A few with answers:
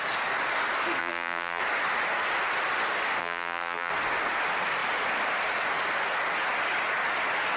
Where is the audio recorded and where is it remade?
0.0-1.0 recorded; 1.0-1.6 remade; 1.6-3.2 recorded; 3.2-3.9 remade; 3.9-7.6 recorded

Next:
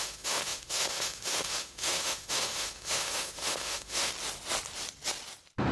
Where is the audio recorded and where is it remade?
0.0-4.1 remade; 4.1-5.7 recorded

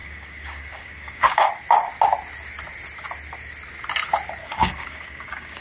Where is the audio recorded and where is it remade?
0.0-1.5 remade; 1.5-4.4 recorded; 4.4-5.6 remade

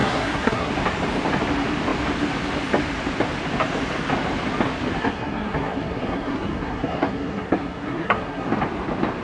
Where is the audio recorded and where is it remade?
0.0-0.7 remade; 0.7-5.0 recorded; 5.0-8.5 remade; 8.5-9.2 recorded

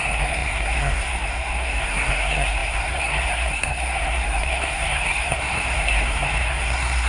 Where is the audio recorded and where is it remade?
0.0-7.1 remade